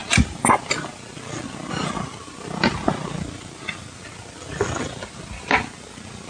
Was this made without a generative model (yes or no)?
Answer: yes